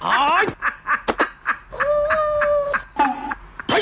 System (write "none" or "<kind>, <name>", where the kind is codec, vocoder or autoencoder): none